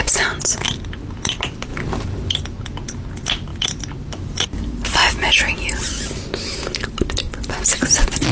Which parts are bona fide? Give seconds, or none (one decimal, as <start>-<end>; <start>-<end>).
0.0-1.7; 2.3-8.3